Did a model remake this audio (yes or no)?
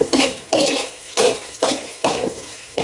yes